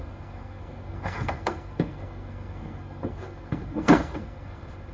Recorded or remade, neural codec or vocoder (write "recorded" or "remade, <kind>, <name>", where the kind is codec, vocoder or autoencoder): remade, codec, SNAC